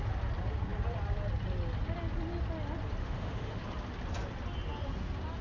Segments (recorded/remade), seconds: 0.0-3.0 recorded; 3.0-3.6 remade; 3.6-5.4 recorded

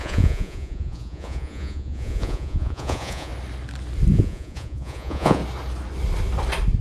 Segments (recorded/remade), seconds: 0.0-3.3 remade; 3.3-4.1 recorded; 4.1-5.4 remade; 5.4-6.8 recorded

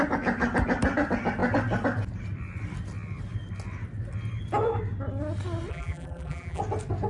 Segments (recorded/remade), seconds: 0.0-5.7 recorded; 5.7-6.6 remade; 6.6-7.1 recorded

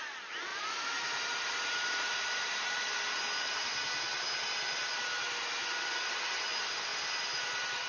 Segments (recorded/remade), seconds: 0.0-0.5 recorded; 0.5-2.7 remade; 2.7-7.9 recorded

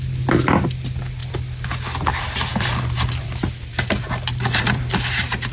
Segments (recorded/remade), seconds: 0.0-2.5 recorded; 2.5-4.8 remade; 4.8-5.5 recorded

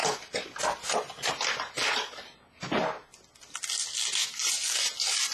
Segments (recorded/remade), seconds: 0.0-5.3 recorded

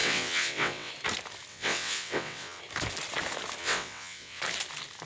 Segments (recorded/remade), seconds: 0.0-0.9 remade; 0.9-1.5 recorded; 1.5-2.6 remade; 2.6-3.6 recorded; 3.6-4.4 remade; 4.4-5.1 recorded

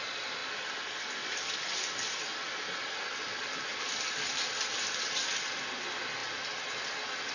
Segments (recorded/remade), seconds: 0.0-7.3 recorded